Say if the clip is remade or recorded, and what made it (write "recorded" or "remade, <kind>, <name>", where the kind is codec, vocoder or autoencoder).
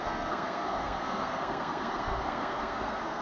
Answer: remade, codec, SNAC